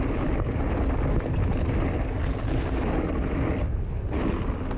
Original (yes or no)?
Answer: yes